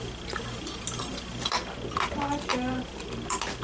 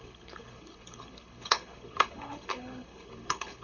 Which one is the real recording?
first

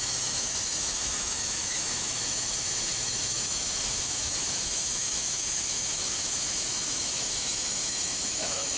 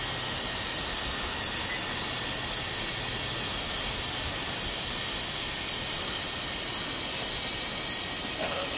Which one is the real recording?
second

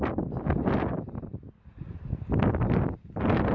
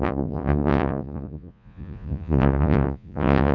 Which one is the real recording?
first